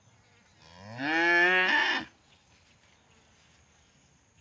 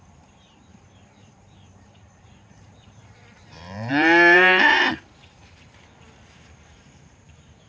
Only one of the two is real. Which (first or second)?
first